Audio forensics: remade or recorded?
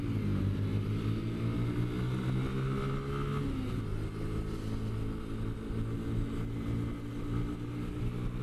recorded